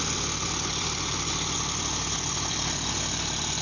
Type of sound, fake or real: fake